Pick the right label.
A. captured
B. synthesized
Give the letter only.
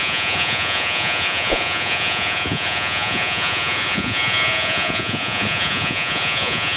B